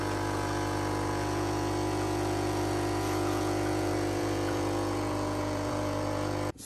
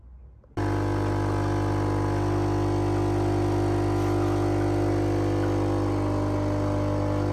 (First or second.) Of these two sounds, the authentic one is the second